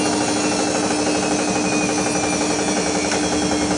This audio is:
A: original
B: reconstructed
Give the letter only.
A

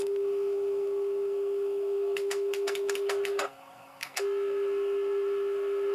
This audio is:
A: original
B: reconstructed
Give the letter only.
B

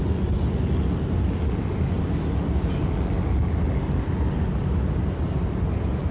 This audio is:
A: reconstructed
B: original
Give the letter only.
B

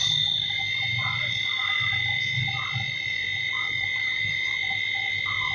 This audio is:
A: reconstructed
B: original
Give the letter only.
A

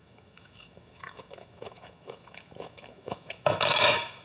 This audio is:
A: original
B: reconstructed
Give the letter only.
B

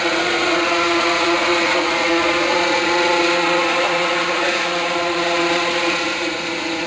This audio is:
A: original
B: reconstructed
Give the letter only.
B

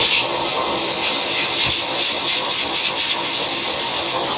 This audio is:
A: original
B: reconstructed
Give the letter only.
A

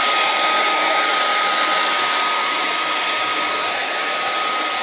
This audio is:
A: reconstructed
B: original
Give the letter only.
B